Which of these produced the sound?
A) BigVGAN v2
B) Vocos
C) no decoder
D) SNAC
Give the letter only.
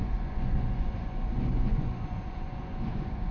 B